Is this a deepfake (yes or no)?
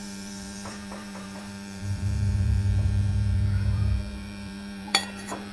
yes